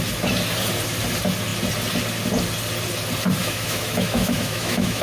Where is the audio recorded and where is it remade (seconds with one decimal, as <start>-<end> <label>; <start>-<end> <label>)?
0.0-3.4 recorded; 3.4-5.0 remade